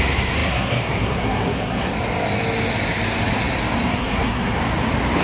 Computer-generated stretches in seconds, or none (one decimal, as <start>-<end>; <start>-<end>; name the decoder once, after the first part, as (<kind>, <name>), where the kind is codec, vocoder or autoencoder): 0.0-1.9 (codec, SNAC); 3.9-4.6